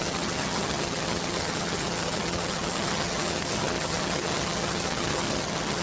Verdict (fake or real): fake